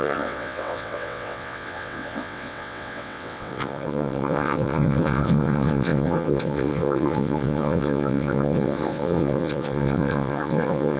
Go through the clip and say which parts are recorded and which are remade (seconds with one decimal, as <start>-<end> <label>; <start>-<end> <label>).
0.0-11.0 remade